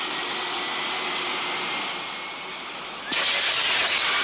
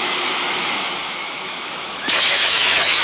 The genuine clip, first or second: first